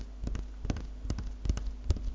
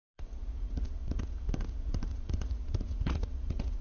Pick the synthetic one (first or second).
second